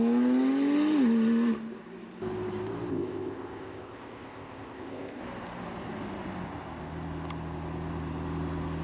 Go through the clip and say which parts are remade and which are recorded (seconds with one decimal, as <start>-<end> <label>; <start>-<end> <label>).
0.0-2.9 recorded; 2.9-5.2 remade; 5.2-8.8 recorded